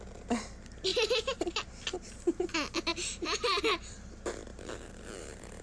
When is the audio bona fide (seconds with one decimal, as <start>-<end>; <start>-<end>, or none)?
0.0-2.9; 3.6-4.5